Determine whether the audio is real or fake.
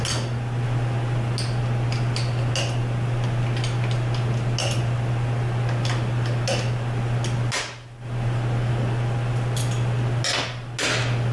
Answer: real